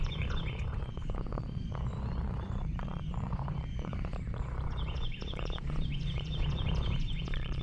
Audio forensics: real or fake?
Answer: fake